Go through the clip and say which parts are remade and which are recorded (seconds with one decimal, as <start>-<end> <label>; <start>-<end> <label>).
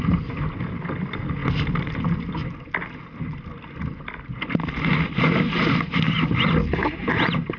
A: 0.0-7.6 recorded